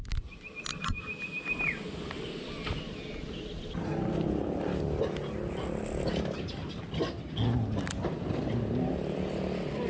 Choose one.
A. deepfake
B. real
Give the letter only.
B